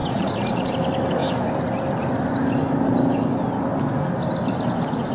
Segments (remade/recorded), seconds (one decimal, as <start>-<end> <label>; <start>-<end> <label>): 0.0-0.7 remade; 0.7-5.1 recorded